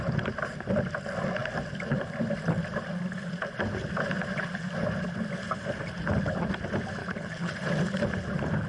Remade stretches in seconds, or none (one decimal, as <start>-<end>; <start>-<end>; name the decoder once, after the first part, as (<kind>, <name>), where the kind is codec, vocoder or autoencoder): 7.0-7.5 (codec, HILCodec)